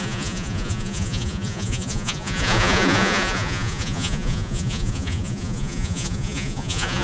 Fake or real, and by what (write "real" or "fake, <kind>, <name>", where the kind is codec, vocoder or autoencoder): fake, vocoder, Vocos